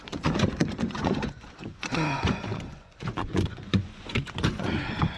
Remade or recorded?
remade